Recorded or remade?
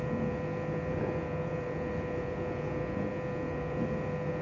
remade